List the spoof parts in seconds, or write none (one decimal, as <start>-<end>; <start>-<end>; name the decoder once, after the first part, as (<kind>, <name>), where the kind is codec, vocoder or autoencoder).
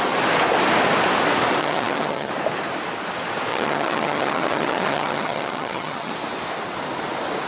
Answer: 1.6-2.3 (vocoder, HiFi-GAN); 3.5-6.1